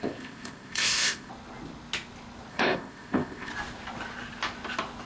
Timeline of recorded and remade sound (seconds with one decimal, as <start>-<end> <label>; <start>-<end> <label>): 0.0-1.3 remade; 1.3-2.5 recorded; 2.5-3.5 remade; 3.5-5.1 recorded